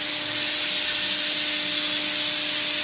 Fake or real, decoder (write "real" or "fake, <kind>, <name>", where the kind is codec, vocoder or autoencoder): real